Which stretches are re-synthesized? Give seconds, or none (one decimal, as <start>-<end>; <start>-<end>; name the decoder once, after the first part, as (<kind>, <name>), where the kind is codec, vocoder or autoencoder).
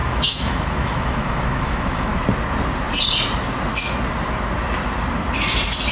0.0-2.1 (autoencoder, DAC-VAE)